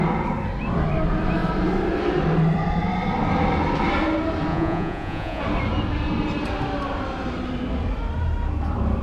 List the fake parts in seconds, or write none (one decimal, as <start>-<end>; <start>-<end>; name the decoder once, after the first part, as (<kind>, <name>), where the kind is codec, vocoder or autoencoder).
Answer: 4.5-5.4 (vocoder, Vocos)